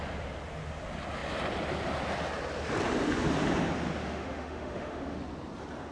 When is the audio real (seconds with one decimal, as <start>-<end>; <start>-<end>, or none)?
0.0-4.0; 5.2-5.9